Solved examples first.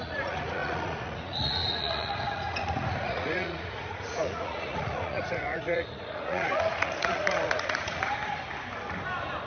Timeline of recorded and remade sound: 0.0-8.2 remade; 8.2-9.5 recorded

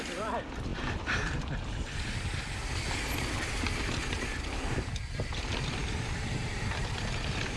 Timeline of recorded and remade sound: 0.0-7.6 recorded

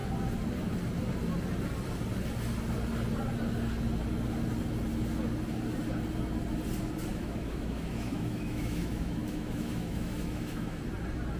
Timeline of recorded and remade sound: 0.0-7.1 recorded; 7.1-10.8 remade; 10.8-11.4 recorded

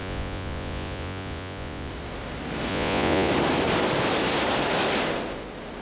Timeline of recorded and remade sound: 0.0-1.9 remade; 1.9-2.7 recorded; 2.7-3.3 remade; 3.3-5.8 recorded